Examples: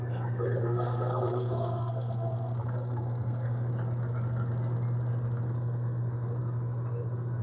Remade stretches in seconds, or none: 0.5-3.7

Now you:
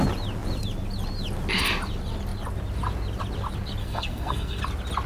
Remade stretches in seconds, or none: 3.8-4.6

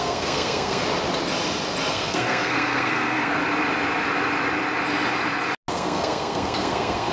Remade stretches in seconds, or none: 0.0-0.8; 1.9-3.4; 5.7-7.1

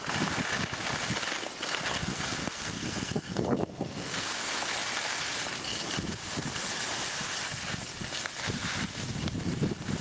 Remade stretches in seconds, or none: 1.9-4.3

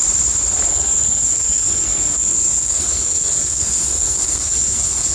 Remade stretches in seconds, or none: 0.7-5.1